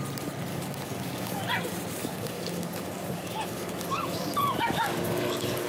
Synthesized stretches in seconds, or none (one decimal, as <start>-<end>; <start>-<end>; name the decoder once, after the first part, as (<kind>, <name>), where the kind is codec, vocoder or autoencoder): 0.5-1.4 (codec, DAC); 2.0-5.7